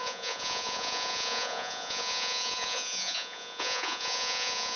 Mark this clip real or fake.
fake